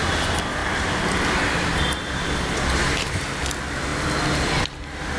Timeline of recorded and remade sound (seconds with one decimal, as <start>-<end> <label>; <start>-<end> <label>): 0.0-5.2 recorded